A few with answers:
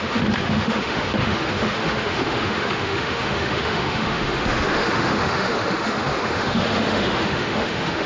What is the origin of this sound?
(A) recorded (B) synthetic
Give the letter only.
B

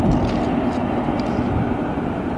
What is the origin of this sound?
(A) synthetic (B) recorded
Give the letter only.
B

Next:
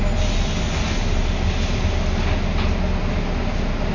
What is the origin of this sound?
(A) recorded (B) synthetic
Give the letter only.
A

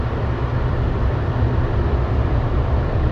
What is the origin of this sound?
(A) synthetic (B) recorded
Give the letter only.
A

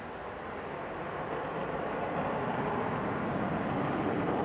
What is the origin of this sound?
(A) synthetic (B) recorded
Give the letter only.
B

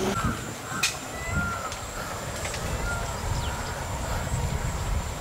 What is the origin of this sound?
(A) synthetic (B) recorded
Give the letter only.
B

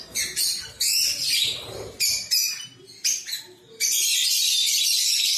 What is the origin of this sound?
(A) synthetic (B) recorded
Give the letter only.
B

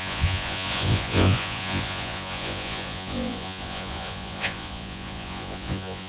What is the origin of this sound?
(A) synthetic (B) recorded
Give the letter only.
A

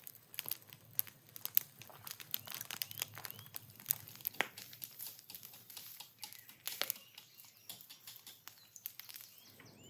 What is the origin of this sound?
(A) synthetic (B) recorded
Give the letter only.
B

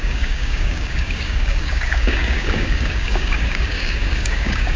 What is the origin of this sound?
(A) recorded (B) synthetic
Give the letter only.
B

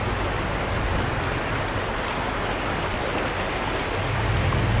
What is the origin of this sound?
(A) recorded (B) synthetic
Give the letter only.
A